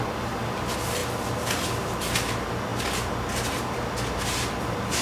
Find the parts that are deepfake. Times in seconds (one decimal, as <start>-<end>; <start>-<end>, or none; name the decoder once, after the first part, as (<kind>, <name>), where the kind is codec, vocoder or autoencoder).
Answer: none